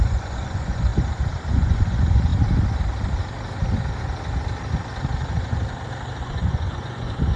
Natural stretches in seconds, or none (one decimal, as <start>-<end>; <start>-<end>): 0.9-1.5; 2.3-6.2